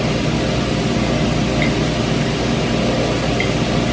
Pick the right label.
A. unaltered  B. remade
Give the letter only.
A